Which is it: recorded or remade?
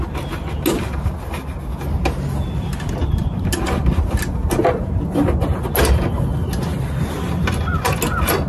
recorded